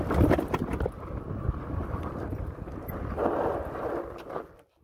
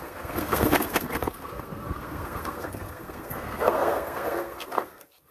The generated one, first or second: second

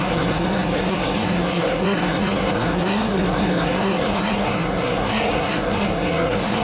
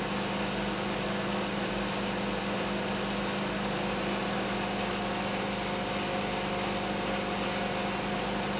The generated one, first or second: first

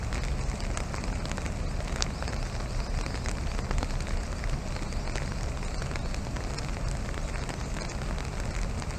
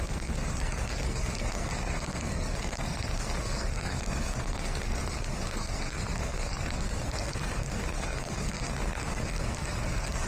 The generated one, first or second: second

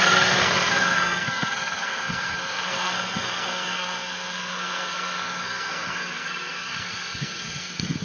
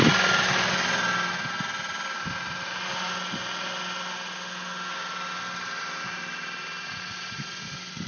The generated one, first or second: first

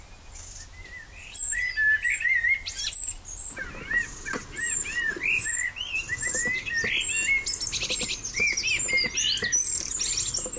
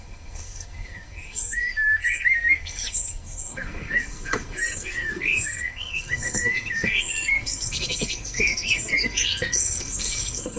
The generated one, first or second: second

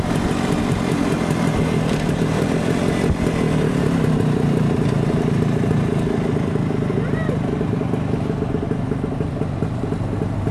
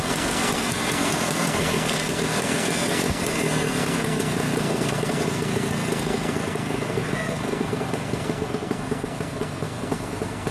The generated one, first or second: second